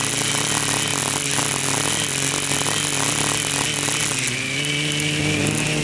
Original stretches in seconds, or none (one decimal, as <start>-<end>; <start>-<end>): 0.0-5.8